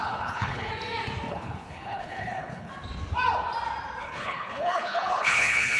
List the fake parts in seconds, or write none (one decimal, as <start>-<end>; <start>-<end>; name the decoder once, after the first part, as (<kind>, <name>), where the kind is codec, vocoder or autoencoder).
0.0-0.7 (codec, HILCodec); 1.3-2.7; 4.0-5.8